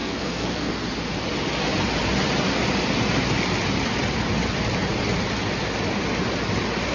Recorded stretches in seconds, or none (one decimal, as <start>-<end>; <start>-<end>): 0.7-6.9